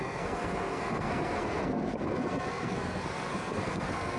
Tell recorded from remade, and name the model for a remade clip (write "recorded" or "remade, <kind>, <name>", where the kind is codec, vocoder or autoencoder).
remade, codec, SNAC